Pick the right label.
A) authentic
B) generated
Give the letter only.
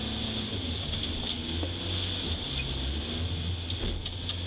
A